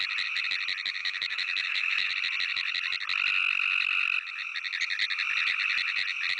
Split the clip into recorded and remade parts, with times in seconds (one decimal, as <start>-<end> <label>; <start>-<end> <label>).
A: 0.0-1.0 recorded; 1.0-2.1 remade; 2.1-6.4 recorded